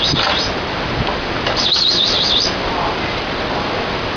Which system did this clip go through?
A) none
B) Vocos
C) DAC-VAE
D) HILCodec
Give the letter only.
A